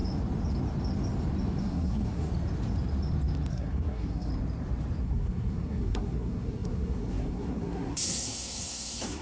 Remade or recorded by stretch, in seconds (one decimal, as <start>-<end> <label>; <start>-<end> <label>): 0.0-1.6 recorded; 1.6-2.3 remade; 2.3-3.5 recorded; 3.5-4.3 remade; 4.3-5.0 recorded; 5.0-9.2 remade